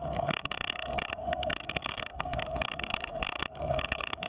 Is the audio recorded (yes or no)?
no